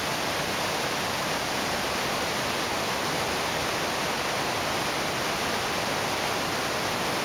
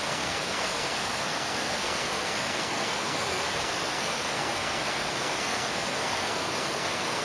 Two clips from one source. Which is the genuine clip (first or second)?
first